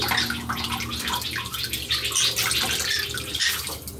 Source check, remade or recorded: recorded